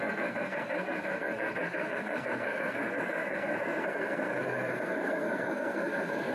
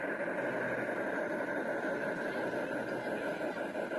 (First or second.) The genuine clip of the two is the second